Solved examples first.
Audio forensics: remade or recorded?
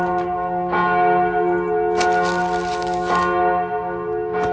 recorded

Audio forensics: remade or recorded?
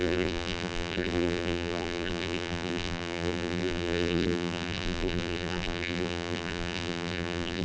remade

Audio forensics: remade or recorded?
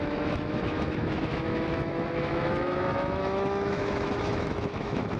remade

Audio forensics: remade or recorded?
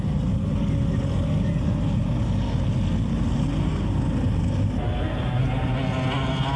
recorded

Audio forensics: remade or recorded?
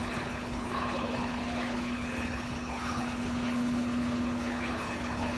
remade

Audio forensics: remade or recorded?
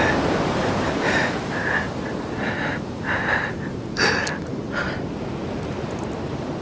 recorded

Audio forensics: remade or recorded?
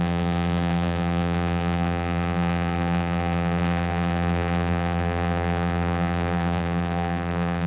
remade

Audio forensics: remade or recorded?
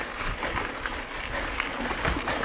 recorded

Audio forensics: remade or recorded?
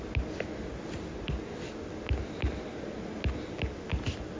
recorded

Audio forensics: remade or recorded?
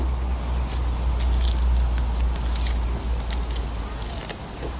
recorded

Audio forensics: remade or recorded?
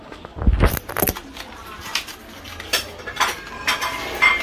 recorded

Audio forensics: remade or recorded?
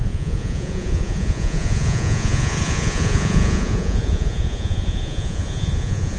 remade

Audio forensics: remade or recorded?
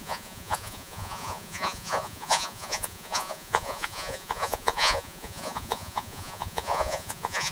remade